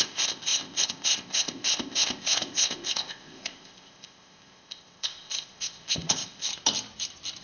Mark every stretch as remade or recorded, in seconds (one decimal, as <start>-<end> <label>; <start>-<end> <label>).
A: 0.0-6.5 remade; 6.5-7.4 recorded